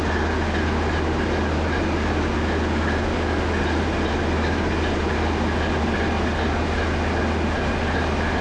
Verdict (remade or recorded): recorded